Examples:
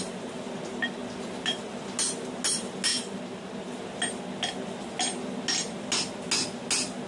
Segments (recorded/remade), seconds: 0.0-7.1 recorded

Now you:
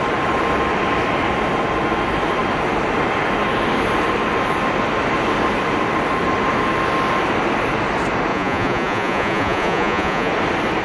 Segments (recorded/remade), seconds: 0.0-8.3 recorded; 8.3-10.3 remade; 10.3-10.8 recorded

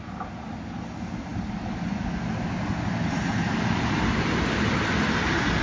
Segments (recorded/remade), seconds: 0.0-5.6 recorded